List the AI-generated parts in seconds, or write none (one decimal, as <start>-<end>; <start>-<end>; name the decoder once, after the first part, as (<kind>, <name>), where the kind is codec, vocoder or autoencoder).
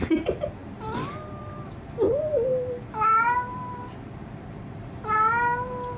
none